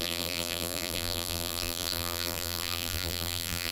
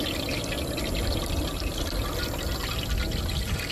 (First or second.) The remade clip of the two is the first